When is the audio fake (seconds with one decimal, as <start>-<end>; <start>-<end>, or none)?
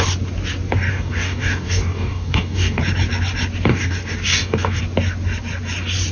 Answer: 0.9-2.8; 3.7-4.8